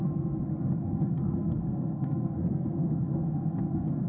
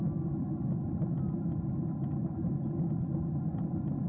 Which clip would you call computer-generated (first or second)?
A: first